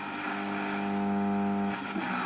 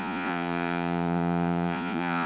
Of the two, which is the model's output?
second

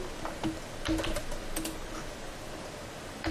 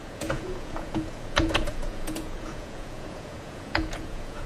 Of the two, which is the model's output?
second